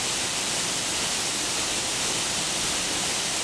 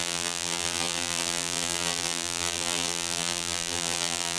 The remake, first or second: second